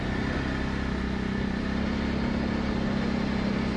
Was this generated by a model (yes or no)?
no